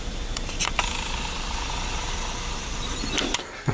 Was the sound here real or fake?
fake